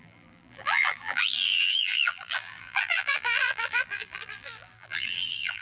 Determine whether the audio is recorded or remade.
remade